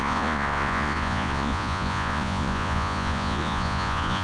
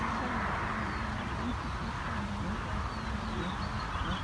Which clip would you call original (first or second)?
second